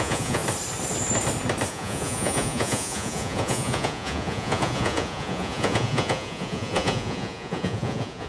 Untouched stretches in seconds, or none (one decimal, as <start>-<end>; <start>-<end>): 0.4-1.7